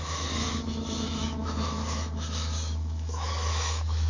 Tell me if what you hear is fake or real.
fake